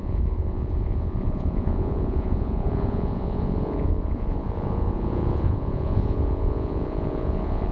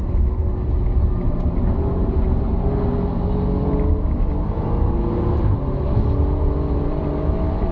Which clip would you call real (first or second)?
second